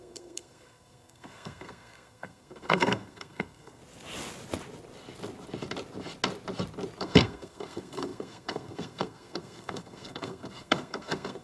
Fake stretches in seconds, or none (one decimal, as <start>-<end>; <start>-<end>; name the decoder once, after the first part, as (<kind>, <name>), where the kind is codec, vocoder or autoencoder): 0.0-3.8 (codec, SNAC); 7.0-11.4

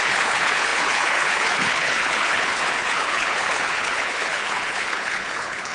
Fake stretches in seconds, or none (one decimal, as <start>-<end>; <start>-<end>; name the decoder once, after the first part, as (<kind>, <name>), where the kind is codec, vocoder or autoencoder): 0.0-5.7 (codec, HILCodec)

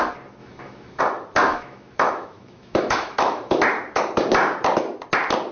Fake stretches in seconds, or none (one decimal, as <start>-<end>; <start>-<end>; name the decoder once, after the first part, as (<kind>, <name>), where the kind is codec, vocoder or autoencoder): 0.4-1.0 (autoencoder, DAC-VAE); 1.5-3.5

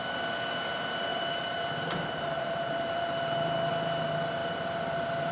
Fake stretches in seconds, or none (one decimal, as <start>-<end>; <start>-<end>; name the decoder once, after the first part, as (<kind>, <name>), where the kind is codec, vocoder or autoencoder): 1.1-3.7 (vocoder, BigVGAN v2)

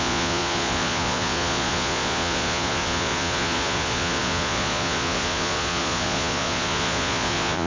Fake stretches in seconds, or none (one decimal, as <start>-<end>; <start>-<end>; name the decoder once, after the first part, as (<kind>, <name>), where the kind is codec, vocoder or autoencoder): 0.0-7.7 (vocoder, Vocos)

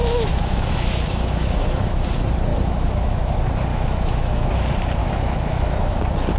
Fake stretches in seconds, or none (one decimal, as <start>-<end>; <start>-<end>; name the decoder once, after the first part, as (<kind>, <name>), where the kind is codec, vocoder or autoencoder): 0.0-2.1 (autoencoder, DAC-VAE); 2.5-3.3; 3.7-4.5; 5.0-6.0

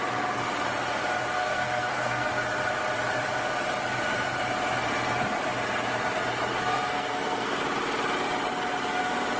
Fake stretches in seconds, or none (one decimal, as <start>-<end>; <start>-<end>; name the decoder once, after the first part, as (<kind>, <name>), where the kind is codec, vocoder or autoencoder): 1.4-2.3 (codec, SNAC); 6.5-7.6